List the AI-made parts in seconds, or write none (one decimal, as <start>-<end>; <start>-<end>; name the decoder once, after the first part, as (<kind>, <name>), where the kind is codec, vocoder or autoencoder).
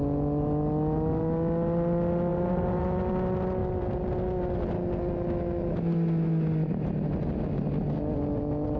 2.3-2.8 (vocoder, BigVGAN v2)